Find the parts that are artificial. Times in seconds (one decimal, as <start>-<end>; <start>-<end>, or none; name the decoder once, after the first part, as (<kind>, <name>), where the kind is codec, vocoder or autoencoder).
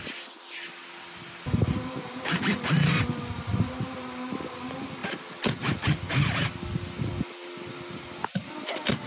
none